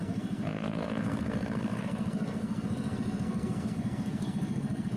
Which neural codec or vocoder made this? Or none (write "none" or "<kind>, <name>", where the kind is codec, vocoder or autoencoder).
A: codec, SNAC